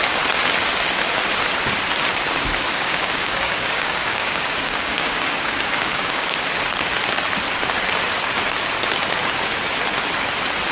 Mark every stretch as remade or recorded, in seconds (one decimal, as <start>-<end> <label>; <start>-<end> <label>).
0.0-2.7 recorded; 2.7-6.3 remade; 6.3-10.7 recorded